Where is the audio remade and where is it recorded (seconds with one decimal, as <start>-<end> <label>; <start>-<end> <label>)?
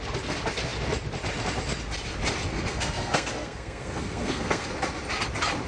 0.0-2.5 recorded; 2.5-4.7 remade; 4.7-5.7 recorded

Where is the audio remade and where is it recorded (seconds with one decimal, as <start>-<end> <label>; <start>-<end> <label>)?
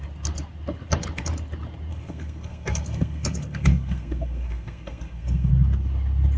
0.0-1.9 recorded; 1.9-5.5 remade; 5.5-6.4 recorded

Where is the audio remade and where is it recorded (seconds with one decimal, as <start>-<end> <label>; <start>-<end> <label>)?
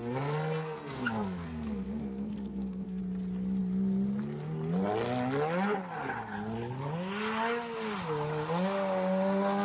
0.0-3.0 remade; 3.0-9.6 recorded